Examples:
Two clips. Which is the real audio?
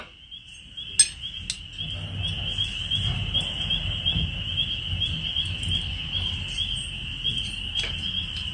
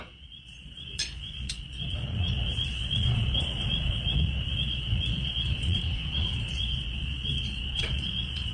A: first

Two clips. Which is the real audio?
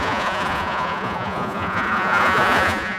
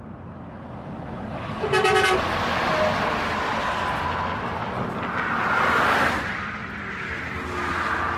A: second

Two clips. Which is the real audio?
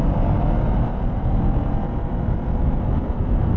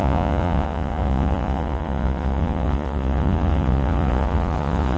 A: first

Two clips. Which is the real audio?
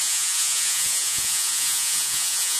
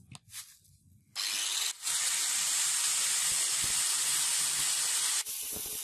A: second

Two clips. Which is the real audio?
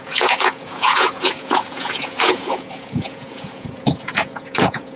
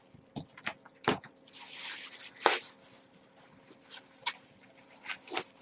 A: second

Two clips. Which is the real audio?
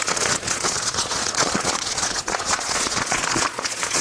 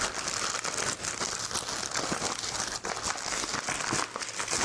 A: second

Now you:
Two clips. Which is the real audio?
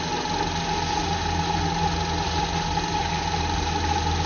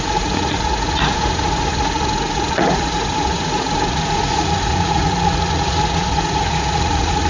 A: first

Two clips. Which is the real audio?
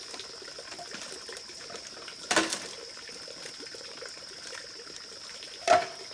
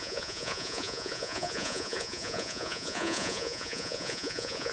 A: first